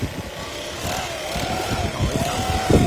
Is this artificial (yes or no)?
no